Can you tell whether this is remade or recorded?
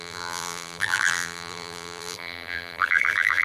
remade